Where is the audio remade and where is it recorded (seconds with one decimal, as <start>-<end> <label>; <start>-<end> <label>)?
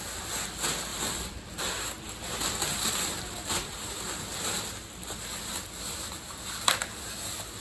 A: 0.0-0.9 recorded; 0.9-3.9 remade; 3.9-7.6 recorded